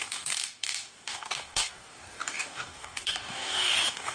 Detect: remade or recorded remade